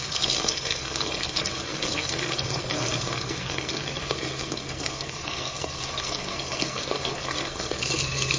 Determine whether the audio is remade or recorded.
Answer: remade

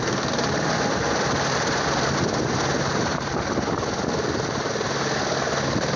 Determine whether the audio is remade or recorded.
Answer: recorded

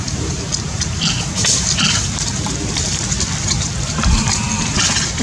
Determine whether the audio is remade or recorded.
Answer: recorded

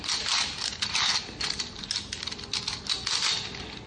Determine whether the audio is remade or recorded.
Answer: recorded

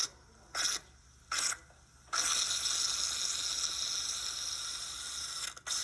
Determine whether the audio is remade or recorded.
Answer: recorded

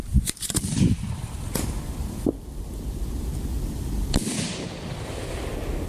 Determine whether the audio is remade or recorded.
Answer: recorded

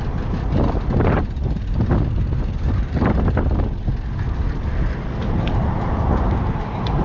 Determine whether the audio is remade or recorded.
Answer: recorded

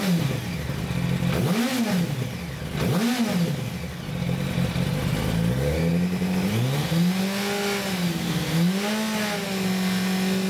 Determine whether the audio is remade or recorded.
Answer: recorded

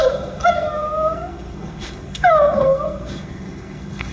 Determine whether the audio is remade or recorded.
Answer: remade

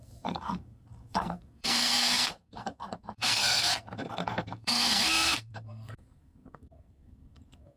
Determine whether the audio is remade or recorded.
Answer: remade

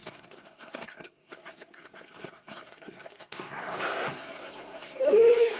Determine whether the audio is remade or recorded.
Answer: remade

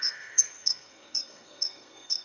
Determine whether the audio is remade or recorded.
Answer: remade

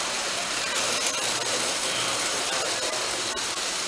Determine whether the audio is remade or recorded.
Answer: recorded